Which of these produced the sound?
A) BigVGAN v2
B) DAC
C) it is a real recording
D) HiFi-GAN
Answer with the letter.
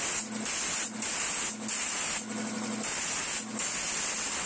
C